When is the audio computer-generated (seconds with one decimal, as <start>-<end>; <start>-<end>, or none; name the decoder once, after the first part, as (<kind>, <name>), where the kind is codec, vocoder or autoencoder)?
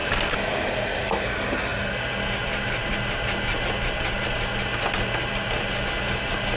none